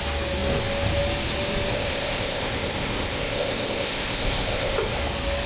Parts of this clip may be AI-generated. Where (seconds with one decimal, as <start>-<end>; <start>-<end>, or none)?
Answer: 1.7-5.0